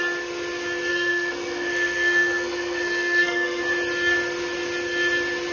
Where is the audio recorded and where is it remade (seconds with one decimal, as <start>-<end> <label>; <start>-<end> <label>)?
0.0-0.9 recorded; 0.9-3.6 remade; 3.6-5.5 recorded